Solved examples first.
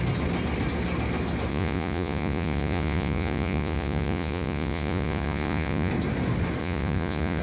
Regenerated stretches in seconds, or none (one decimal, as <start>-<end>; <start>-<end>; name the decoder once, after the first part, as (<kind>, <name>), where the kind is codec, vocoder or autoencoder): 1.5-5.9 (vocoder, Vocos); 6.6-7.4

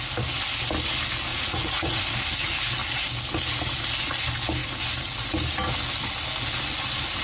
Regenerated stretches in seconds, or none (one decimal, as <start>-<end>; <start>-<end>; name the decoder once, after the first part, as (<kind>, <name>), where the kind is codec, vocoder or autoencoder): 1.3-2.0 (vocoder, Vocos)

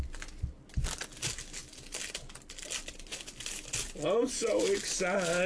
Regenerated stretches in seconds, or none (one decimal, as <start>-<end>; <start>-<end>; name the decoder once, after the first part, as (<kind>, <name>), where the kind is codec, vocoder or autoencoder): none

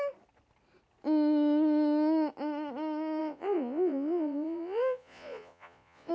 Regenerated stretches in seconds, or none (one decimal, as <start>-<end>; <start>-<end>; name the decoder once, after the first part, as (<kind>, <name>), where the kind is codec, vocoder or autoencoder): 3.2-6.1 (vocoder, Vocos)

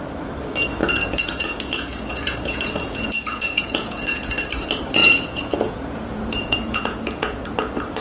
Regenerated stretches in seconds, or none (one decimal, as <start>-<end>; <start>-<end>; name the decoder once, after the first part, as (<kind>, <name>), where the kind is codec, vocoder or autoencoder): 0.8-4.3 (vocoder, Vocos); 5.0-7.5